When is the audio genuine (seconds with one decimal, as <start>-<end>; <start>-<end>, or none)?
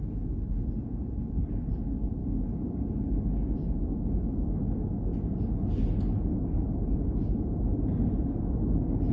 0.0-9.1